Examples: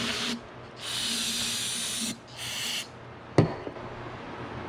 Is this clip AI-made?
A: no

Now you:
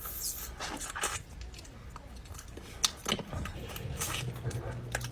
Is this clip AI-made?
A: no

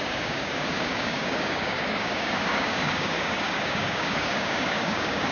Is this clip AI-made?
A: yes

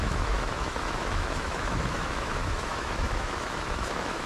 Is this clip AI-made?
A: yes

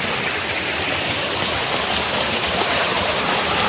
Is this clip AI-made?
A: no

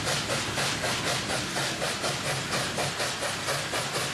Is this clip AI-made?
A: no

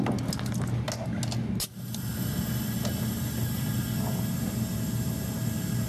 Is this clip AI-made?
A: no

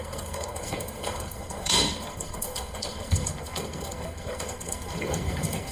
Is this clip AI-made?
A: yes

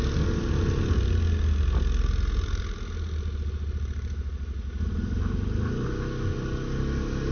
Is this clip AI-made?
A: no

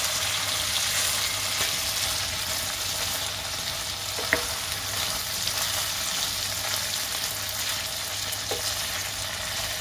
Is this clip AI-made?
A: no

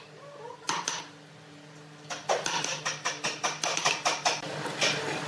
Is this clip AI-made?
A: no